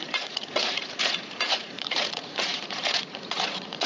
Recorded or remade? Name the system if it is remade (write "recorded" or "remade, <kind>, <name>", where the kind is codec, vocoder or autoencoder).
remade, vocoder, Vocos